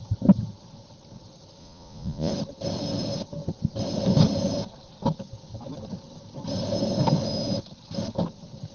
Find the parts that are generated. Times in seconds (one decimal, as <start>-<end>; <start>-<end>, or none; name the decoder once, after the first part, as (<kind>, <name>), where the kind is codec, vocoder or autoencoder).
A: 1.6-2.3 (vocoder, Vocos)